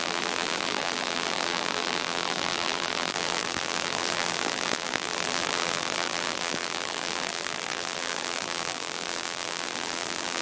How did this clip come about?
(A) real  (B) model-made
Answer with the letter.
B